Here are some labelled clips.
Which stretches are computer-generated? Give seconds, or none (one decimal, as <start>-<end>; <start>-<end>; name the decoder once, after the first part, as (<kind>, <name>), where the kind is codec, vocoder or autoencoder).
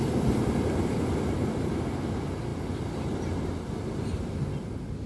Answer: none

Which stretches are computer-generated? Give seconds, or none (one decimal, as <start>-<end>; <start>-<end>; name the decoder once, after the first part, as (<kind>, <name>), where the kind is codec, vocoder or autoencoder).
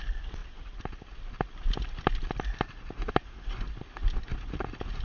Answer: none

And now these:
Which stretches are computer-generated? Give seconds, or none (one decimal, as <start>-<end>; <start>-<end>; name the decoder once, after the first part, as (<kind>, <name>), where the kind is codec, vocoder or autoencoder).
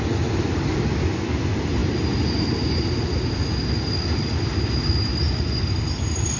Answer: none